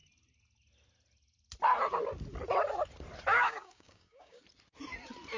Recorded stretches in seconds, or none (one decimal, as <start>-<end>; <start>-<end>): 0.0-3.3; 4.4-5.4